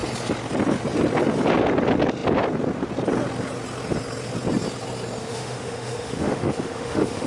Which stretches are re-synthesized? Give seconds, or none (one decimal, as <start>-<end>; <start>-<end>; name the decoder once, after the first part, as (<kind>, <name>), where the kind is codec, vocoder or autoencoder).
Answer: 5.2-7.3 (autoencoder, DAC-VAE)